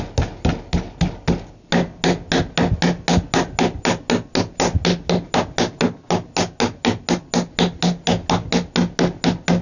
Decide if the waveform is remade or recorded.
recorded